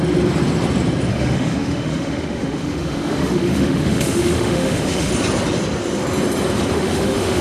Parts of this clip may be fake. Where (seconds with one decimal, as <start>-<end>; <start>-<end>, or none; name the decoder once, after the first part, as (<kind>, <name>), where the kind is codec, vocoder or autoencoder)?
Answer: 1.1-5.1 (autoencoder, DAC-VAE); 6.7-7.4

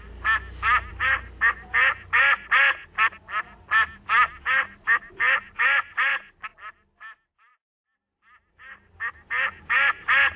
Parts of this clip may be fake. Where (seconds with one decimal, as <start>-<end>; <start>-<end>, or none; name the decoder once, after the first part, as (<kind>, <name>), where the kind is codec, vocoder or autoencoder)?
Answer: none

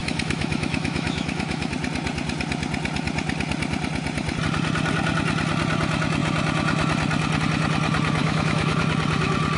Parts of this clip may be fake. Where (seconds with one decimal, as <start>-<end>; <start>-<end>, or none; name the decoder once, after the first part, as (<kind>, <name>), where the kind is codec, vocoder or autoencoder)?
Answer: 0.0-1.7 (autoencoder, DAC-VAE); 8.2-8.8

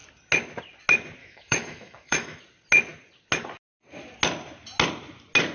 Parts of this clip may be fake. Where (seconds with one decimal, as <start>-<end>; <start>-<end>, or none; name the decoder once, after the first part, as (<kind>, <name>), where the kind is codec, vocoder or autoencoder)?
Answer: 1.2-2.4 (autoencoder, DAC-VAE)

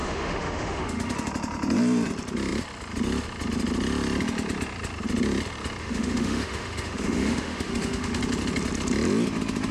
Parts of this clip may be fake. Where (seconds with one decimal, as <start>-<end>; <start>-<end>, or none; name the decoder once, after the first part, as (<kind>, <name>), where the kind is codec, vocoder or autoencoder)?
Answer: 0.0-1.3 (autoencoder, DAC-VAE); 5.8-8.2

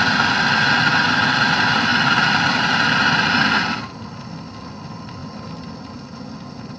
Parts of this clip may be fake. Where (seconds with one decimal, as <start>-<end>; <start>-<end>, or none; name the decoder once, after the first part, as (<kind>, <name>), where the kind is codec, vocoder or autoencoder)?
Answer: none

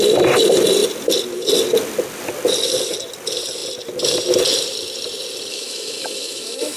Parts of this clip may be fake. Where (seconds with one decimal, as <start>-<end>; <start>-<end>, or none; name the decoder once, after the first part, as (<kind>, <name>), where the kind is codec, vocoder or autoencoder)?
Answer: 5.5-6.8 (autoencoder, DAC-VAE)

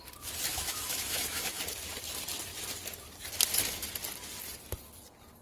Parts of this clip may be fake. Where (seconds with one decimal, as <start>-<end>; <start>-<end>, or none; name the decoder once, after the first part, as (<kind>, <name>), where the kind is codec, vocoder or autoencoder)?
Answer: 0.5-1.6 (autoencoder, DAC-VAE)